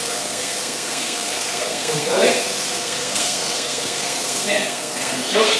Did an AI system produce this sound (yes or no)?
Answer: yes